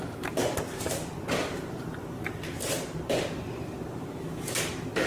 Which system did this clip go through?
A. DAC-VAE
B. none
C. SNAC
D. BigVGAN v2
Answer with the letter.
D